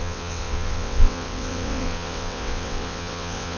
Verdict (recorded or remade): remade